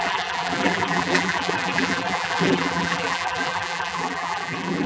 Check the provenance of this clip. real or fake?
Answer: fake